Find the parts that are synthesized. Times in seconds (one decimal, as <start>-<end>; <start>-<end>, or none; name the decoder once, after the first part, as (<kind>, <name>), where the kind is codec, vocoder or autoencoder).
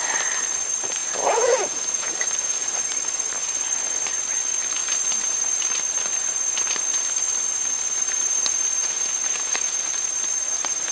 1.0-2.1 (vocoder, Vocos); 8.8-9.9